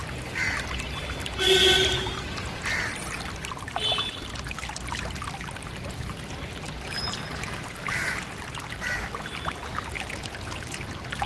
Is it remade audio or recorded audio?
recorded